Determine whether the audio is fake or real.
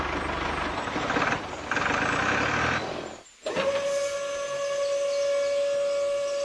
real